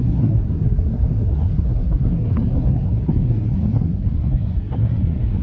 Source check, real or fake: fake